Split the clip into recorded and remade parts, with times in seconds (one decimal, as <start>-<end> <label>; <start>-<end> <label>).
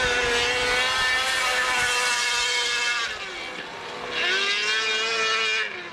0.0-5.9 recorded